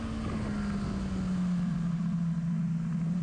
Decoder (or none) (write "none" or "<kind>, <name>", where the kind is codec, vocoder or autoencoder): none